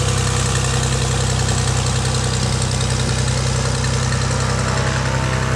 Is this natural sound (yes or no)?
yes